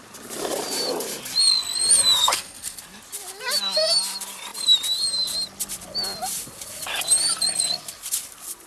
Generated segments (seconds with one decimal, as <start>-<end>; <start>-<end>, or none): 2.2-2.8